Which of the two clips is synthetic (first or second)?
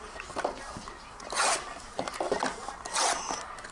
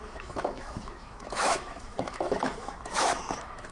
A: second